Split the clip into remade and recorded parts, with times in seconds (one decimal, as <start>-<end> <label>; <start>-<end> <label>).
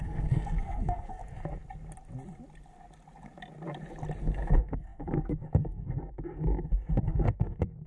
0.0-1.2 remade; 1.2-4.2 recorded; 4.2-7.9 remade